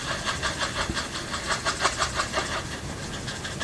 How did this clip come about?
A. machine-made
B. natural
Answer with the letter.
B